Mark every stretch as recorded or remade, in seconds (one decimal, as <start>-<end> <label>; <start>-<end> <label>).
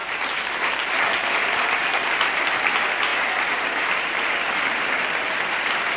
0.0-3.1 recorded; 3.1-5.0 remade; 5.0-6.0 recorded